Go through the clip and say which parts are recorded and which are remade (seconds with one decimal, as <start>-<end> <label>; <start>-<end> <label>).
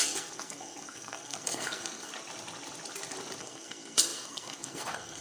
0.0-2.1 remade; 2.1-3.4 recorded; 3.4-5.2 remade